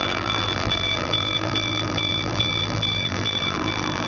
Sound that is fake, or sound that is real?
fake